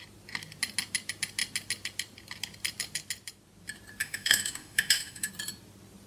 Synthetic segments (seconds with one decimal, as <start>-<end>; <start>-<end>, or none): 4.0-5.3